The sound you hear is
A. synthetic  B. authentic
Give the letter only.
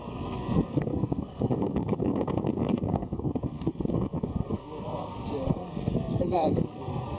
A